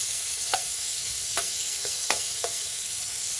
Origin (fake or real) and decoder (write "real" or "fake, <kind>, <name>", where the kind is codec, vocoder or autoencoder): fake, codec, SNAC